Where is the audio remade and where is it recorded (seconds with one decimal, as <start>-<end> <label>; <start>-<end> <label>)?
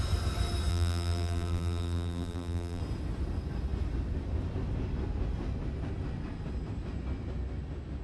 0.0-0.7 recorded; 0.7-2.8 remade; 2.8-8.0 recorded